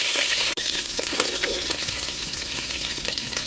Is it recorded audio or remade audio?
remade